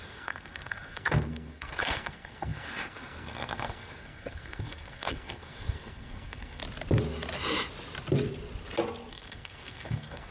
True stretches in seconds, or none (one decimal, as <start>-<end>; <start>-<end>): 6.6-9.1